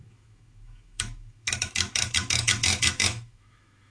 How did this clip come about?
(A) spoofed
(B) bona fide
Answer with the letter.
A